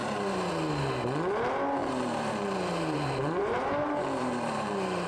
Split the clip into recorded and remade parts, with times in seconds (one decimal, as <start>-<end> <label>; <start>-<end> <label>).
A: 0.0-0.5 remade; 0.5-1.8 recorded; 1.8-5.1 remade